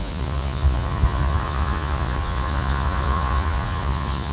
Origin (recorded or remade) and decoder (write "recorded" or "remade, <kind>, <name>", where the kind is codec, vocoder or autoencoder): remade, vocoder, Vocos